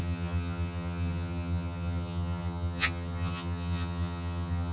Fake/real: fake